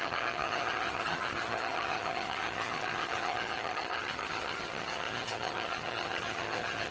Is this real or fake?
fake